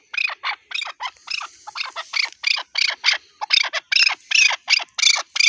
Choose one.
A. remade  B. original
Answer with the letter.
B